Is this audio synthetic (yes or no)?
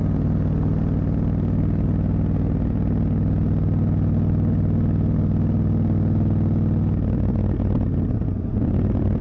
no